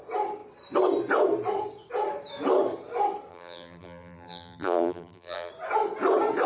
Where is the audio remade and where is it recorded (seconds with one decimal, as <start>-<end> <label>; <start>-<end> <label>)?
0.0-3.3 recorded; 3.3-5.5 remade; 5.5-6.5 recorded